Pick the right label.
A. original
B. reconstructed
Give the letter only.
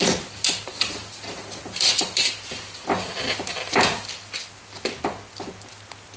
A